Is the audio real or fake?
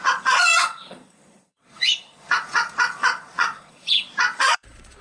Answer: fake